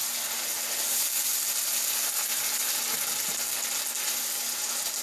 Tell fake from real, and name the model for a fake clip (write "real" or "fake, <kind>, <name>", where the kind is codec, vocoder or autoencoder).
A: real